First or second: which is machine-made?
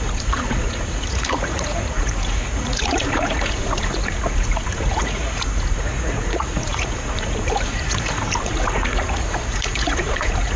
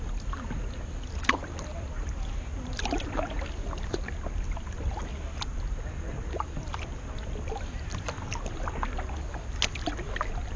first